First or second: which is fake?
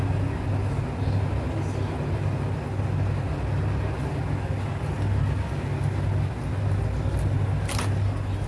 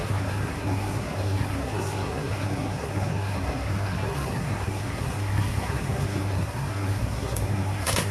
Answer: second